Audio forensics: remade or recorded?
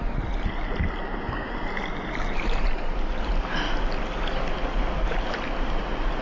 recorded